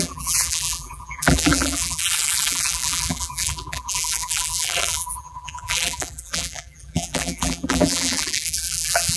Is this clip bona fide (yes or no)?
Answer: no